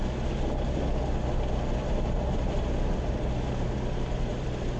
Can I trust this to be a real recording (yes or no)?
yes